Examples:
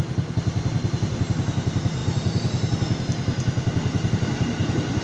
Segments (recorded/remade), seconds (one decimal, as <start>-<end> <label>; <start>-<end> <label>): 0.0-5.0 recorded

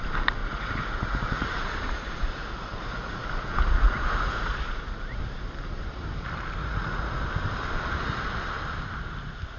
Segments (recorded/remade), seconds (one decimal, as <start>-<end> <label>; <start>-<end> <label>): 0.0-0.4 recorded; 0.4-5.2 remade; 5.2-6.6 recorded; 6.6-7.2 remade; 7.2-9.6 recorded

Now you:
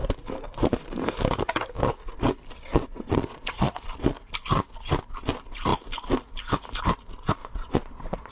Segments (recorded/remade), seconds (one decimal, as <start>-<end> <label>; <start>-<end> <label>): 0.0-2.7 recorded; 2.7-3.7 remade; 3.7-7.4 recorded; 7.4-8.3 remade

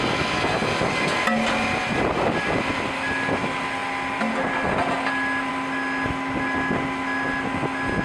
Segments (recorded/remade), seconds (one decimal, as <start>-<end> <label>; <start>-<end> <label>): 0.0-8.0 recorded

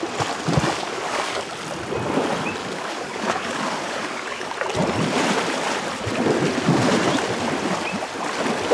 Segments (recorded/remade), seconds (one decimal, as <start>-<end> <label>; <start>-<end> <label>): 0.0-0.8 recorded; 0.8-1.5 remade; 1.5-2.6 recorded; 2.6-4.5 remade; 4.5-8.7 recorded